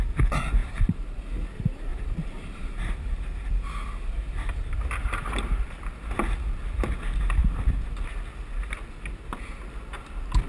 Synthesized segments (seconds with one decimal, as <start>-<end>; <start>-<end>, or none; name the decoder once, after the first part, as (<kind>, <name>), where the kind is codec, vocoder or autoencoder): 0.6-1.2 (vocoder, BigVGAN v2); 1.9-6.1